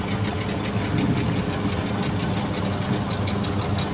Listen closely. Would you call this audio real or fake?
real